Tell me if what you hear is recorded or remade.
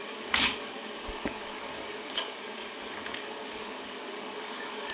remade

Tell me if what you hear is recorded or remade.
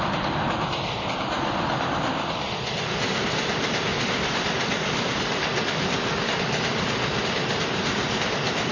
recorded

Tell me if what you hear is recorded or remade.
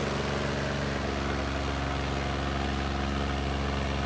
recorded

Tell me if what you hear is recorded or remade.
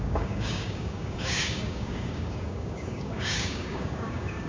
remade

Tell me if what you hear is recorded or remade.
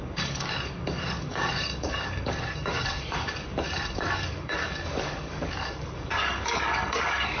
remade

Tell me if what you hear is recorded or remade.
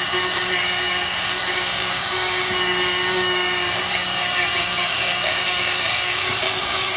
remade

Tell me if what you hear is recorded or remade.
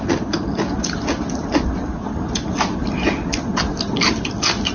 recorded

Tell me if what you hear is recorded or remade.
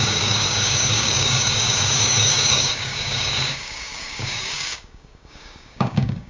remade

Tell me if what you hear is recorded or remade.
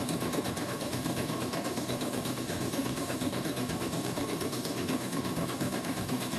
remade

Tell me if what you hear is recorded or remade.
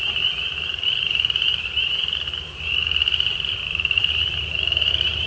recorded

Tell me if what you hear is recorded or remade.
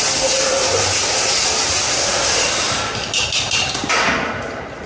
recorded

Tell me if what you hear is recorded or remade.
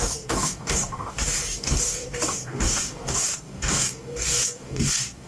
remade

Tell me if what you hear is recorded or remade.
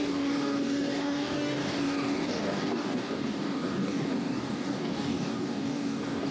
remade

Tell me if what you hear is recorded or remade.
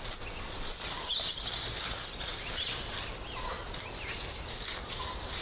recorded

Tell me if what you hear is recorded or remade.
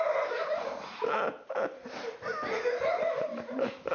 recorded